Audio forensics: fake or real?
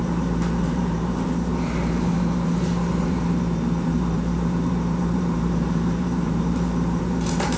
fake